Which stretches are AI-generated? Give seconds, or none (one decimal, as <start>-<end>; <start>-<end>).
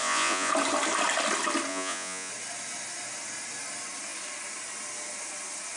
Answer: 0.0-0.5; 1.7-2.3